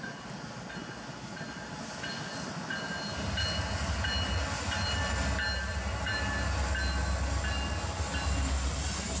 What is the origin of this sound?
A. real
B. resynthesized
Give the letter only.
A